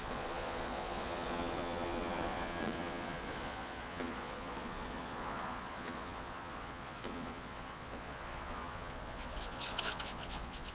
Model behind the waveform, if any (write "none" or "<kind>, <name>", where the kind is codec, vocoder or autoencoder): vocoder, Vocos